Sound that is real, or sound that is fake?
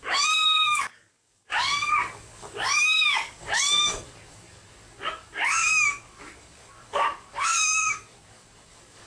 fake